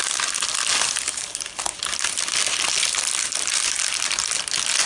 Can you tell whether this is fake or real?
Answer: real